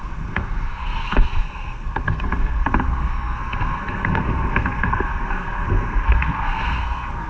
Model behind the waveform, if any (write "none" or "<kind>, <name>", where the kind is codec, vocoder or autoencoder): codec, SNAC